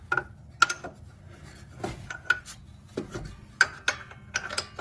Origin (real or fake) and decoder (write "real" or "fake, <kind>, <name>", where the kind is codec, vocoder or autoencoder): real